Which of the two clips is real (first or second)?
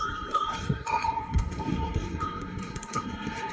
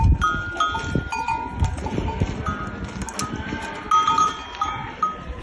second